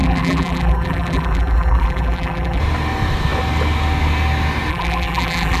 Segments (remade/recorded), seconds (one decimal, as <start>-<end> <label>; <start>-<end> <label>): 0.0-2.6 remade; 2.6-4.7 recorded; 4.7-5.6 remade